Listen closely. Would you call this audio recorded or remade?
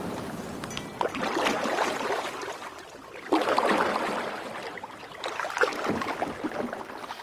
recorded